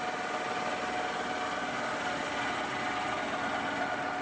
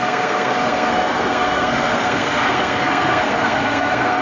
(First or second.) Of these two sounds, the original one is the first